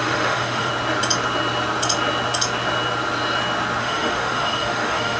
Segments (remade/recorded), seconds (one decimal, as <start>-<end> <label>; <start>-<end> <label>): 0.0-0.7 remade; 0.7-3.8 recorded; 3.8-5.2 remade